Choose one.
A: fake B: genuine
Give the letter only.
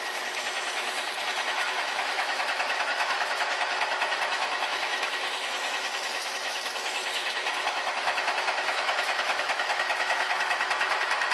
A